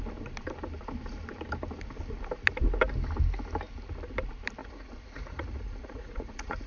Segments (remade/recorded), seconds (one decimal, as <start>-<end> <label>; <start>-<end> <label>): 0.0-4.6 recorded; 4.6-6.7 remade